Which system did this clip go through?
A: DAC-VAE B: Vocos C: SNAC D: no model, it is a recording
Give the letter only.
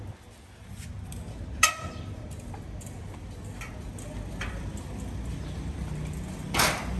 D